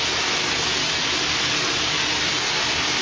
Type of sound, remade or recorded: recorded